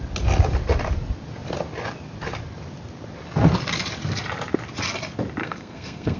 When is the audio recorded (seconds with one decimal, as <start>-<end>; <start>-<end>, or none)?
0.0-5.4